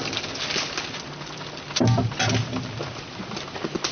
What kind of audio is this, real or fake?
real